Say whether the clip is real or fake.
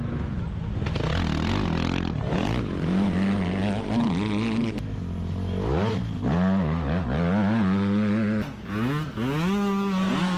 real